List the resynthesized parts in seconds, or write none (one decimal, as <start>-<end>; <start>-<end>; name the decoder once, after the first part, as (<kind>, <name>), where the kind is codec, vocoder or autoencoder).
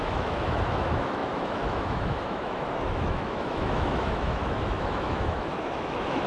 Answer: 0.0-6.3 (autoencoder, DAC-VAE)